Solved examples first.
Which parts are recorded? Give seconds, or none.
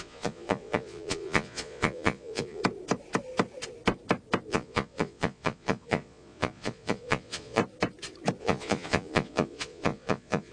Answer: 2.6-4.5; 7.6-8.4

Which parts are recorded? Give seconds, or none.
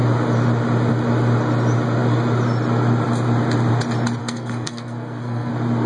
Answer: 0.0-4.2; 5.5-5.9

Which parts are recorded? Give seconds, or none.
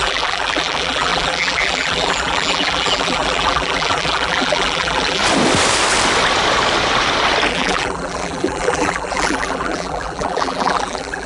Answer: 5.2-7.5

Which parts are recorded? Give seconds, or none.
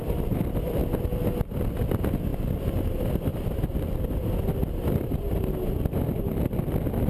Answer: 0.8-1.6; 2.3-2.9; 3.3-6.1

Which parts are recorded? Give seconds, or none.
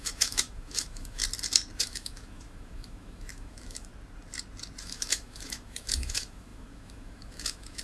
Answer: 1.2-1.8; 3.9-4.8